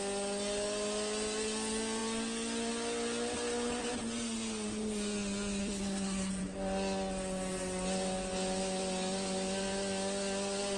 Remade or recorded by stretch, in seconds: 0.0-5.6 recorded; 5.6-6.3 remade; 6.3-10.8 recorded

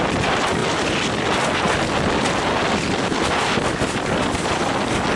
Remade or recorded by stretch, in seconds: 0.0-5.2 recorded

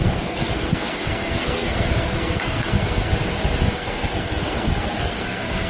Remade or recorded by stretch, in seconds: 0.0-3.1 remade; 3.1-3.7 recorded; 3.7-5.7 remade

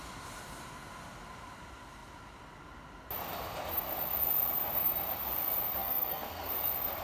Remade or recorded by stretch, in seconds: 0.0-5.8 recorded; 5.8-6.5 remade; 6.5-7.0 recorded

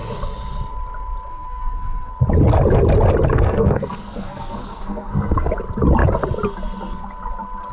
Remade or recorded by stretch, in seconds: 0.0-1.3 recorded; 1.3-2.1 remade; 2.1-3.3 recorded; 3.3-5.5 remade; 5.5-7.7 recorded